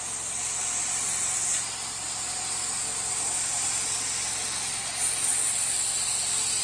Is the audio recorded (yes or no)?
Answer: yes